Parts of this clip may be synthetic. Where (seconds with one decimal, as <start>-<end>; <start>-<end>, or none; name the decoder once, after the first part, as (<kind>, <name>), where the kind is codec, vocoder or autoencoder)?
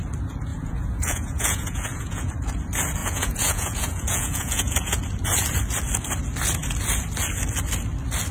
0.5-2.3 (vocoder, Vocos); 3.0-5.0